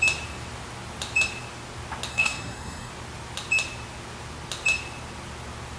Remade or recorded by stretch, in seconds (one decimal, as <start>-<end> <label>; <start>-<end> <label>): 0.0-2.1 recorded; 2.1-2.9 remade; 2.9-5.8 recorded

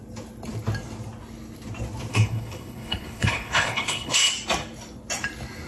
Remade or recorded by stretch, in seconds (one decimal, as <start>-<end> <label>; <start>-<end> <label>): 0.0-2.1 recorded; 2.1-4.3 remade; 4.3-5.7 recorded

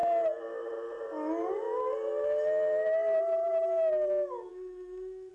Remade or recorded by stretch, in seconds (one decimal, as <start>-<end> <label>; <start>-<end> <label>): 0.0-4.5 recorded; 4.5-5.3 remade

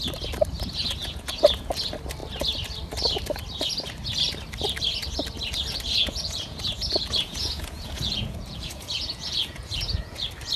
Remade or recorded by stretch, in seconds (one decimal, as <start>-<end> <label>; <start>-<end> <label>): 0.0-1.0 recorded; 1.0-1.7 remade; 1.7-6.0 recorded; 6.0-10.2 remade; 10.2-10.6 recorded

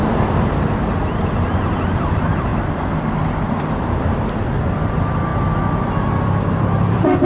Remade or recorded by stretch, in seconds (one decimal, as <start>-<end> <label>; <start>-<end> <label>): 0.0-0.6 recorded; 0.6-2.5 remade; 2.5-3.0 recorded; 3.0-5.3 remade; 5.3-6.2 recorded; 6.2-7.3 remade